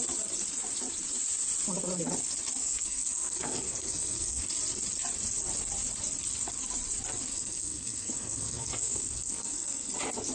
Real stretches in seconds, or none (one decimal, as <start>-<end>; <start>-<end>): 0.0-2.6; 4.4-7.3; 9.9-10.3